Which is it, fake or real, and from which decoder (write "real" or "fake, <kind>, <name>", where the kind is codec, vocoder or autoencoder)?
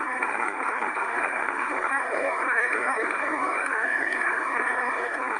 fake, codec, SNAC